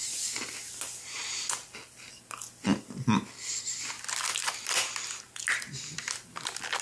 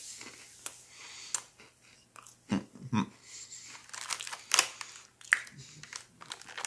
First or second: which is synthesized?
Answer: first